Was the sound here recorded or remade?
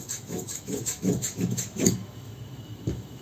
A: remade